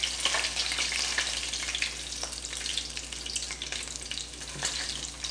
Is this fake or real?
real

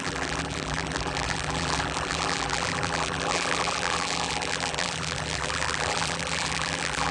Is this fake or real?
fake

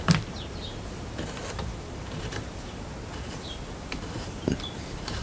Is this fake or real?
fake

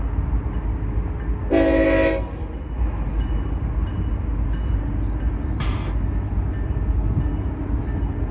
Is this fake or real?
real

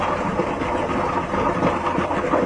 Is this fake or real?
real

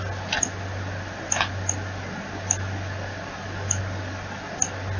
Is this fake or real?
real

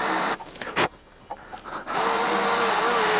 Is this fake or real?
real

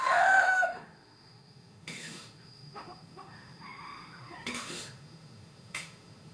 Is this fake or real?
fake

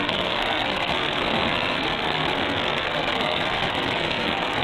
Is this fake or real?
fake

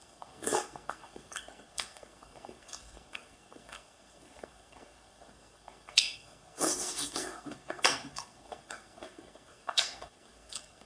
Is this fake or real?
fake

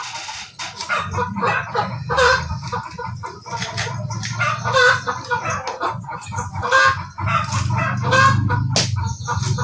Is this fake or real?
real